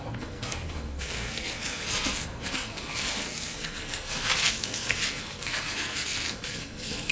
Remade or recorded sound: remade